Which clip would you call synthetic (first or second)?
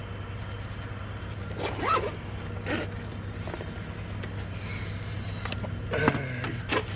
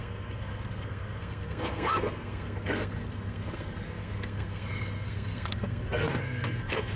second